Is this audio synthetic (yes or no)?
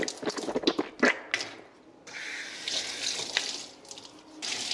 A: no